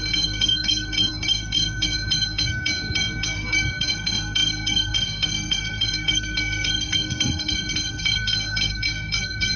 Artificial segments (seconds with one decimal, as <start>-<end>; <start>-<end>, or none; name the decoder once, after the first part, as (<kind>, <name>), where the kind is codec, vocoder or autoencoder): 0.0-9.6 (codec, SNAC)